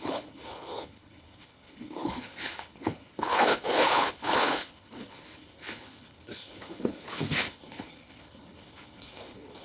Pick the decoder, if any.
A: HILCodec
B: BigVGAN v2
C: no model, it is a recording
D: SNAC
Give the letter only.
A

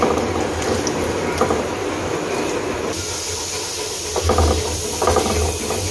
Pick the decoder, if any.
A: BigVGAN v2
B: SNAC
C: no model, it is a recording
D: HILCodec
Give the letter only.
C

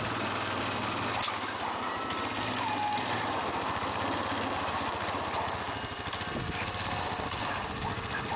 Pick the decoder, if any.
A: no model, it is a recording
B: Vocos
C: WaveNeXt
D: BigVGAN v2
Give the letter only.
A